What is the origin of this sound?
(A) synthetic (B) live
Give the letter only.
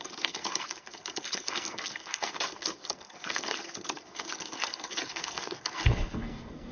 A